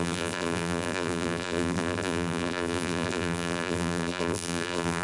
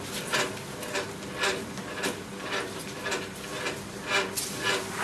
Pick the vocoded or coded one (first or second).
first